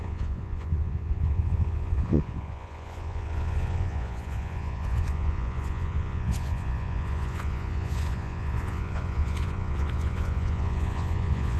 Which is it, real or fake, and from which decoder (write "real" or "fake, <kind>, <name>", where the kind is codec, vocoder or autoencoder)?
fake, vocoder, Vocos